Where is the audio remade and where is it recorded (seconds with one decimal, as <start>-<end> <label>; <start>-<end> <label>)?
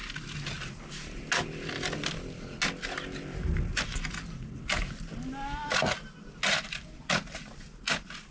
0.0-8.3 recorded